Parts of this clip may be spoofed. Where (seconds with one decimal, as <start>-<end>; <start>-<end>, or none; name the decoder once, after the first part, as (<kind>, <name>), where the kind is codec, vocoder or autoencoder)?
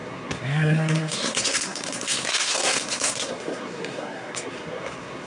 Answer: 0.0-5.3 (codec, SNAC)